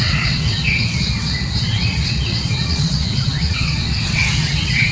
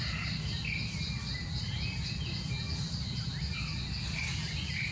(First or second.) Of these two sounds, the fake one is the first